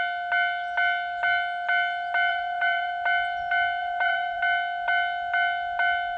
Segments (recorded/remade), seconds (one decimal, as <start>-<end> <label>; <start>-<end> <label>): 0.0-2.3 recorded; 2.3-2.9 remade; 2.9-3.8 recorded; 3.8-4.4 remade; 4.4-6.2 recorded